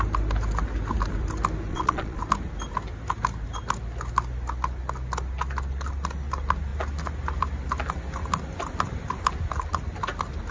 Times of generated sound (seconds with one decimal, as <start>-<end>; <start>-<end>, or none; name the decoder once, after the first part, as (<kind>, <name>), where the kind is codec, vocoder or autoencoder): 1.7-2.2 (vocoder, Vocos)